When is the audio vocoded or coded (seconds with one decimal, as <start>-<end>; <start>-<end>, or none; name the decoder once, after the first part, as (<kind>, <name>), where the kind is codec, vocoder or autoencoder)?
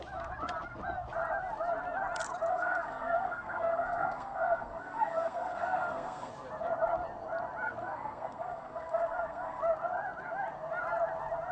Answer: 2.5-6.3 (codec, SNAC); 7.8-9.6